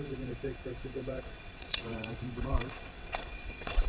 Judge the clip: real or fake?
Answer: fake